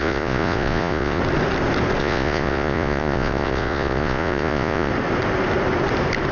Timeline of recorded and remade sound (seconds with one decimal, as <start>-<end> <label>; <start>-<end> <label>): 0.0-1.2 remade; 1.2-2.0 recorded; 2.0-4.9 remade; 4.9-6.3 recorded